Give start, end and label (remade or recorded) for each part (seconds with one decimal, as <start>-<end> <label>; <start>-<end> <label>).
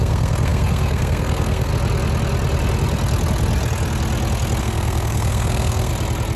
0.0-1.7 remade; 1.7-4.6 recorded; 4.6-5.9 remade; 5.9-6.4 recorded